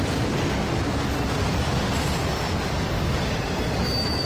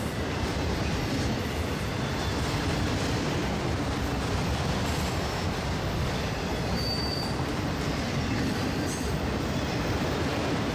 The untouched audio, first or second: first